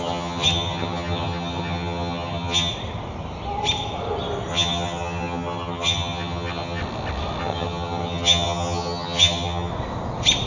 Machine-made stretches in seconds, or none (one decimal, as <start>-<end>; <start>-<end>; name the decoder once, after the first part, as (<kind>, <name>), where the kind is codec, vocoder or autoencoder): 0.0-2.7 (vocoder, HiFi-GAN); 4.5-6.8; 7.4-9.7